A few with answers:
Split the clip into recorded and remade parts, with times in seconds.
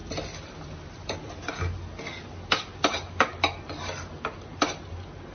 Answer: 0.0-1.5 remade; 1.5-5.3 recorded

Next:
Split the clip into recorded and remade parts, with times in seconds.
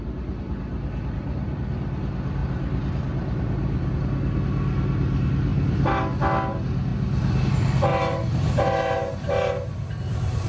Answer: 0.0-2.4 recorded; 2.4-4.0 remade; 4.0-5.5 recorded; 5.5-6.0 remade; 6.0-7.9 recorded; 7.9-10.5 remade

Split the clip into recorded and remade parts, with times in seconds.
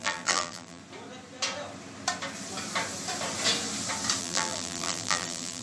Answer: 0.0-0.8 remade; 0.8-4.2 recorded; 4.2-5.6 remade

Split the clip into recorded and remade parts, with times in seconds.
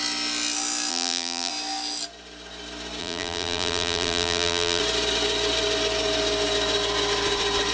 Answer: 0.0-0.9 recorded; 0.9-1.5 remade; 1.5-3.0 recorded; 3.0-4.8 remade; 4.8-7.7 recorded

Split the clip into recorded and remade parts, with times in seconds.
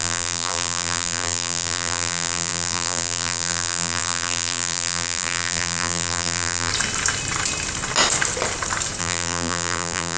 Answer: 0.0-6.7 remade; 6.7-9.0 recorded; 9.0-10.2 remade